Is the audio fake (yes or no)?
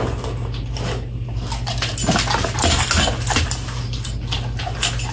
no